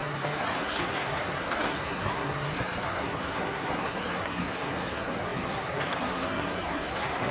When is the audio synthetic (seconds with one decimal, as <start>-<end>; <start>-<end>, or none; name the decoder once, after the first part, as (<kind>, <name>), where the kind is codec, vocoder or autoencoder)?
0.0-7.3 (codec, SNAC)